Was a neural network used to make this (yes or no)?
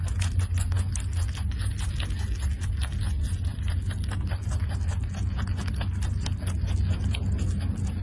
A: no